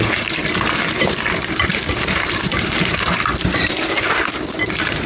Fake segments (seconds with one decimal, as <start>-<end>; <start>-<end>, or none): 0.0-0.4; 1.0-5.1